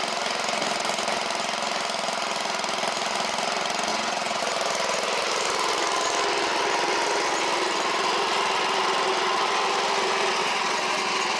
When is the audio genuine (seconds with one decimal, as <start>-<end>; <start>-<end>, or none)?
0.0-3.9; 4.4-10.4; 11.0-11.4